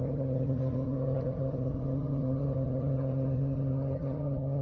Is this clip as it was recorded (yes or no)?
no